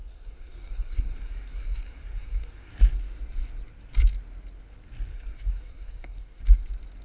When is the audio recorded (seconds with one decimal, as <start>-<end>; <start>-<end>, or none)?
2.7-5.1; 6.4-7.0